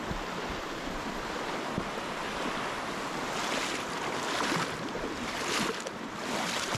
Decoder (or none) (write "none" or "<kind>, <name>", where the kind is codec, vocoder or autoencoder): none